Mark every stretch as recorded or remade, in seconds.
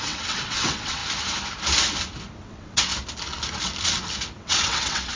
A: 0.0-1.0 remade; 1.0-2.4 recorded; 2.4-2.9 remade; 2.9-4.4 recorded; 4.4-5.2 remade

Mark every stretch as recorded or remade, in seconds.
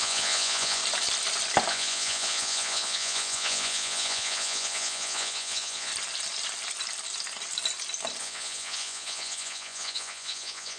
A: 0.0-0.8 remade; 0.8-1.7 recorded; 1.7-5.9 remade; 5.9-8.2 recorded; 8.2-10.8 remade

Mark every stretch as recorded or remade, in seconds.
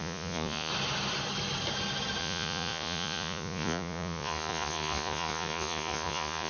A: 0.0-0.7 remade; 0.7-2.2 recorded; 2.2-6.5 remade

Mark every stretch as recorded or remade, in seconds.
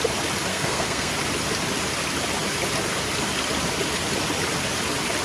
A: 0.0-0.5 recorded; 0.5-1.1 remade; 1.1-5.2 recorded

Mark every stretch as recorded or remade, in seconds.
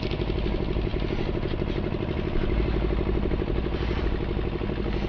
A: 0.0-5.1 recorded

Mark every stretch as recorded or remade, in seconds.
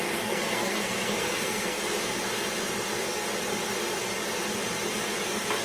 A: 0.0-1.8 remade; 1.8-5.6 recorded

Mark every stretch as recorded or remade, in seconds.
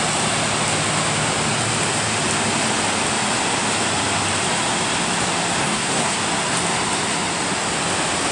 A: 0.0-5.6 recorded; 5.6-6.2 remade; 6.2-8.3 recorded